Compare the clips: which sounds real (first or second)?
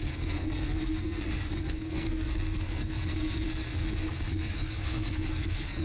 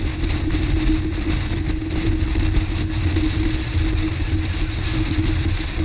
second